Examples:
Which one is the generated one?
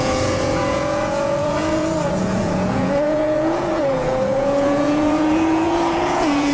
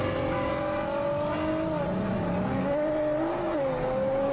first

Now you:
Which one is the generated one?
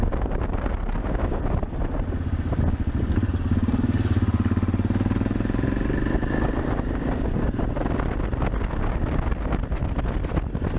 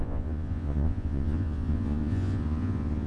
second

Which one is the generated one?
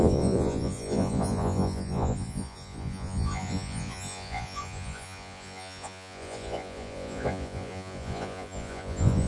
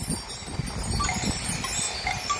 first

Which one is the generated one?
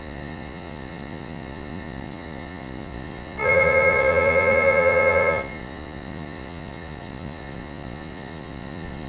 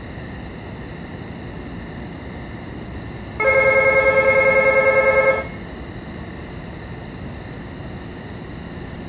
first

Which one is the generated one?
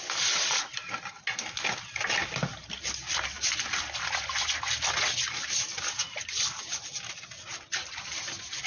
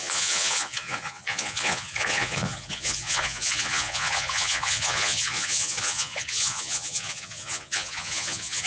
second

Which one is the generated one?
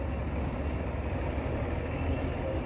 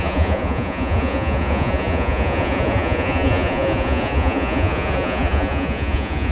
second